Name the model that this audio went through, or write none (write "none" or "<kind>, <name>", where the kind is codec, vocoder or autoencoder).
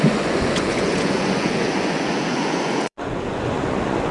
vocoder, Vocos